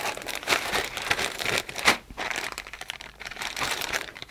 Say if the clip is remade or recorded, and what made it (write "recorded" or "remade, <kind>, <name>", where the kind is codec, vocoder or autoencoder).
remade, vocoder, BigVGAN v2